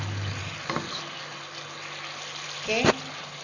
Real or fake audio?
real